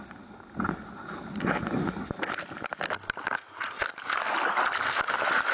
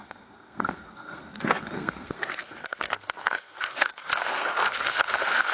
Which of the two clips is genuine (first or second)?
first